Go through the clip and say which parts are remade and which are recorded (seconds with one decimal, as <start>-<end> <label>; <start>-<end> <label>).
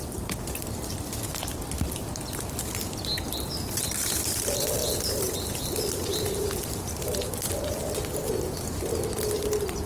0.0-9.9 recorded